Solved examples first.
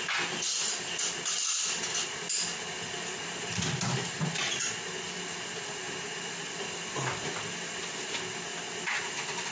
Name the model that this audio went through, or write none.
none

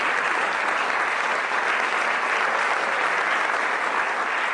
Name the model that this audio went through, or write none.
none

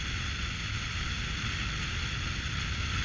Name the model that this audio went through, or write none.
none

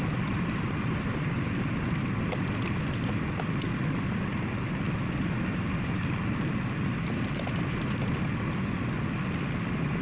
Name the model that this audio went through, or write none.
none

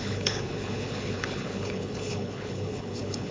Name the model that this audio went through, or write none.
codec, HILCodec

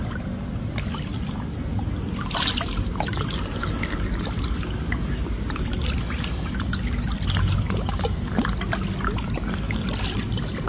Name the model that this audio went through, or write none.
none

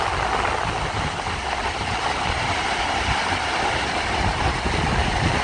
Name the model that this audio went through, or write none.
none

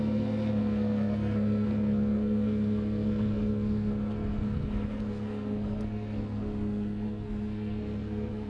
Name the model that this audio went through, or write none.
codec, SNAC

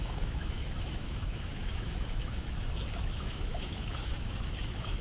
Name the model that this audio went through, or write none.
autoencoder, DAC-VAE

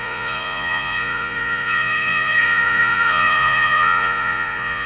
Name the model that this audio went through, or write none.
vocoder, Vocos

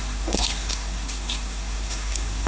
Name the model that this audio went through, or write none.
codec, SNAC